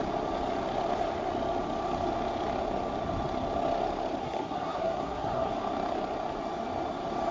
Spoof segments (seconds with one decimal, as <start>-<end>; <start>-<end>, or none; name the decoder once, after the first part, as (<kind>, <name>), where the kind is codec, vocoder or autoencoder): 4.2-5.5 (codec, SNAC)